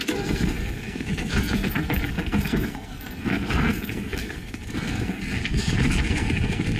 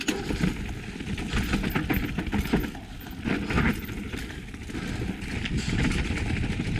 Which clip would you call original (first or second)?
second